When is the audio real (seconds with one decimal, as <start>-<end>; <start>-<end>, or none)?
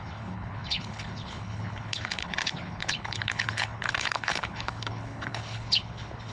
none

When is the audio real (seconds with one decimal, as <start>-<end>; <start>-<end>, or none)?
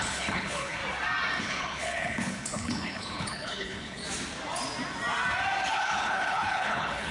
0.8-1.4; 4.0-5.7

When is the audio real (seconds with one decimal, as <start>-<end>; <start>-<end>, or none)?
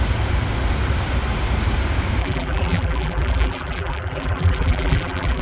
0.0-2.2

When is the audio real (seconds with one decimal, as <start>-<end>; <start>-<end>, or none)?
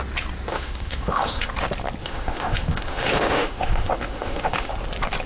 0.0-0.5; 1.5-2.0; 4.7-5.3